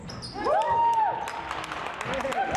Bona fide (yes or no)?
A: yes